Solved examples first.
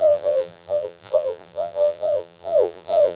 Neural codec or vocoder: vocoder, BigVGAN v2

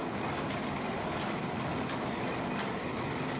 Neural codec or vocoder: none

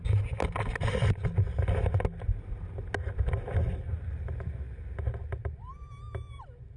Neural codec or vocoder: none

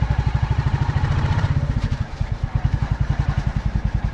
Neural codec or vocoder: vocoder, BigVGAN v2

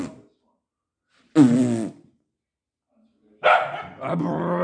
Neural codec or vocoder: none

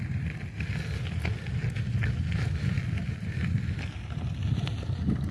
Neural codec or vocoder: none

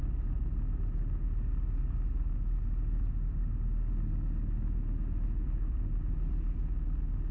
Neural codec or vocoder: none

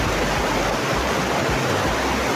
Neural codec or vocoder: none